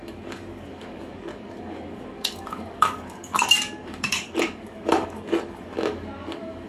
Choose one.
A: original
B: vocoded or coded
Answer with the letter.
B